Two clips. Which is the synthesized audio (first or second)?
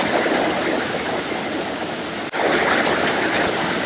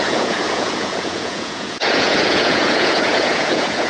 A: second